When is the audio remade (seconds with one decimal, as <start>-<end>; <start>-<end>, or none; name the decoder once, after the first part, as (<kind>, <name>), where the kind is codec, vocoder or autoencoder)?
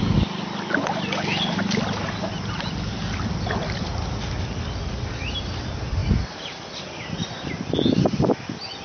none